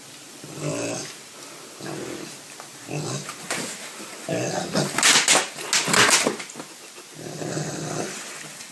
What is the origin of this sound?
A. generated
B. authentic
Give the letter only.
B